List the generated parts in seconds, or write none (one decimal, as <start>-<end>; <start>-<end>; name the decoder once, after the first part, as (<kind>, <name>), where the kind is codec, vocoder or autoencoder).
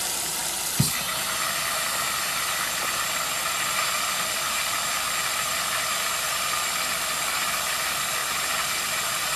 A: none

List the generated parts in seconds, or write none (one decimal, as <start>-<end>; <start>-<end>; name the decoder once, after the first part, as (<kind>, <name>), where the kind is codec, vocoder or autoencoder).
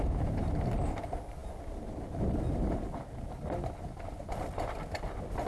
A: none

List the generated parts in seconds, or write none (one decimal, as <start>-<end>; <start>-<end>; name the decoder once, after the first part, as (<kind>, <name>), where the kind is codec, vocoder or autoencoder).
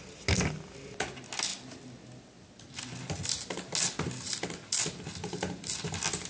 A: none